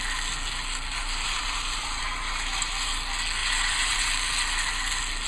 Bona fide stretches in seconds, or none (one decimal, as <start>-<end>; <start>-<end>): 0.0-1.0; 2.0-3.4; 4.0-5.3